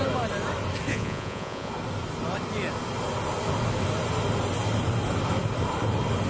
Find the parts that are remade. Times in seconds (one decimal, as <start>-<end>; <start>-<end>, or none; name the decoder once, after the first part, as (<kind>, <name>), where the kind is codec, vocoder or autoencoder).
0.9-1.7 (vocoder, Vocos)